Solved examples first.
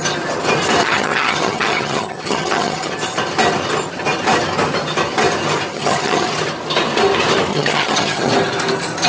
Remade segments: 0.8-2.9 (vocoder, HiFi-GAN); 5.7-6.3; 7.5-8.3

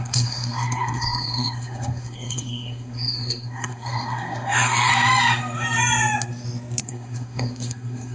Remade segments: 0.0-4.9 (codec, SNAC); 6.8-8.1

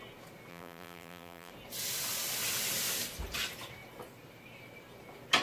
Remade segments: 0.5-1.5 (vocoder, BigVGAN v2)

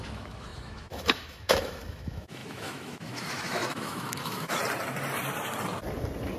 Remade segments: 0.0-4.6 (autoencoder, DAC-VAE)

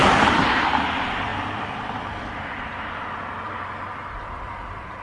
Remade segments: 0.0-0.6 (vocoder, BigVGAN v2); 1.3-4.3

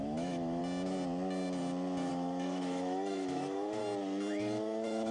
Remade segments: 0.0-0.6 (autoencoder, DAC-VAE); 2.1-3.8; 4.3-5.1

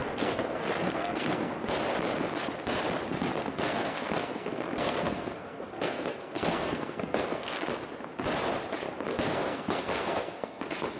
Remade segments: 0.0-1.5 (codec, SNAC); 3.5-7.6; 9.1-10.6

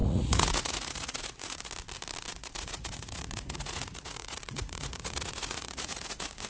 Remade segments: 0.0-1.7 (vocoder, Vocos); 2.3-6.5